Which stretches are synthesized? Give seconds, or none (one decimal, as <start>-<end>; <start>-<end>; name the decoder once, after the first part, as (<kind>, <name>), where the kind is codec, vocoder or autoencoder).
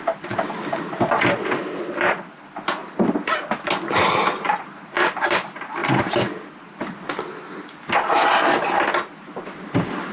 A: 5.8-6.4 (vocoder, BigVGAN v2)